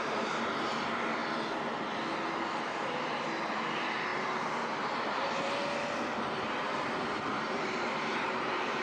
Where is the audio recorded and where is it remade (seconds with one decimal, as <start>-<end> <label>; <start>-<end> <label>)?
0.0-1.2 remade; 1.2-2.3 recorded; 2.3-5.6 remade; 5.6-6.6 recorded; 6.6-8.8 remade